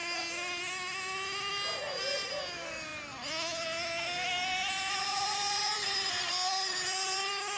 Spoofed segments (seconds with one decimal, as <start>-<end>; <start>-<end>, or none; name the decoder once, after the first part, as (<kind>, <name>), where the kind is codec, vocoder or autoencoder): 1.8-2.9 (vocoder, BigVGAN v2); 5.0-7.6